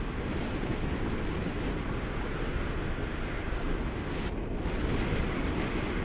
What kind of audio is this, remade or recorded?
recorded